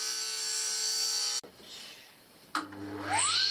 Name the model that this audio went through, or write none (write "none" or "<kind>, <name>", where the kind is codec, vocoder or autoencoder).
none